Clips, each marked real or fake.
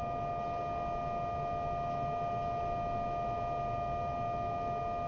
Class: real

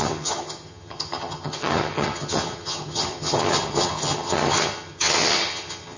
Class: fake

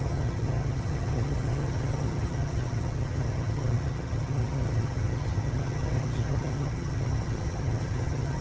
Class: fake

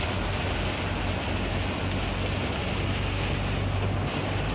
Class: real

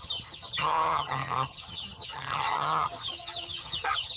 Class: fake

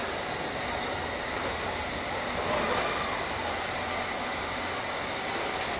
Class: real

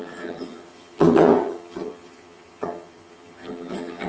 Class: fake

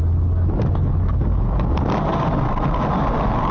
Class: real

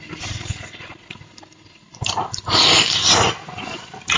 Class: real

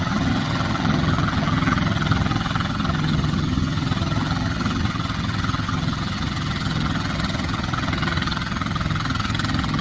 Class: fake